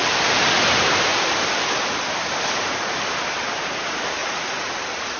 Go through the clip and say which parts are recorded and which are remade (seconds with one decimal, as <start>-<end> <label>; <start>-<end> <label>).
0.0-4.2 recorded; 4.2-4.7 remade; 4.7-5.2 recorded